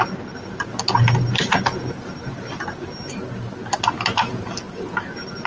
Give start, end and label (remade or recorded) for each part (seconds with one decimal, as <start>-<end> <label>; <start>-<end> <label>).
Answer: 0.0-5.5 recorded